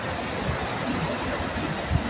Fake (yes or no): no